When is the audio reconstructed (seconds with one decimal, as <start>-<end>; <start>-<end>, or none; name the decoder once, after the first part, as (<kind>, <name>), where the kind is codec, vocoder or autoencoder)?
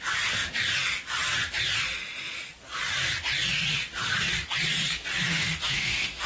5.3-6.3 (autoencoder, DAC-VAE)